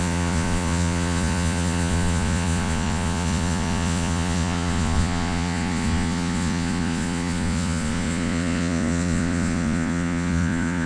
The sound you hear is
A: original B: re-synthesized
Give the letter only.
B